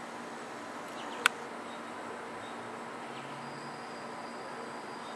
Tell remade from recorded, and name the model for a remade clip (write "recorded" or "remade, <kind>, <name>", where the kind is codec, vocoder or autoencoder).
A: recorded